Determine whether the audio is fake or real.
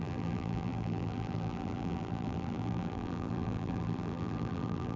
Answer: fake